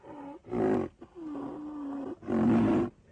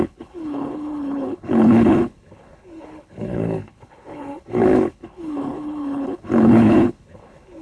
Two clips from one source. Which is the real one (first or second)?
first